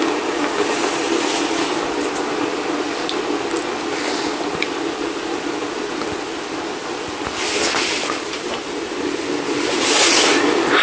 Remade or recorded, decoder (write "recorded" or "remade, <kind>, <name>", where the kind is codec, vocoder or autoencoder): recorded